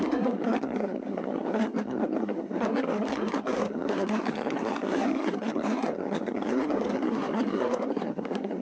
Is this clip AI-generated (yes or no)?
yes